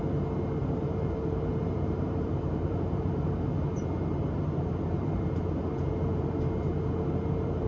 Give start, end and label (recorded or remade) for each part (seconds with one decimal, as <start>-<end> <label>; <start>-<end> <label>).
0.0-0.6 recorded; 0.6-3.5 remade; 3.5-4.0 recorded; 4.0-7.7 remade